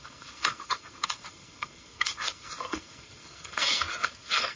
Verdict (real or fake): fake